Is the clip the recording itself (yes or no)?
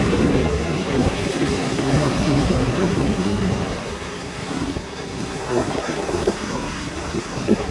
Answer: no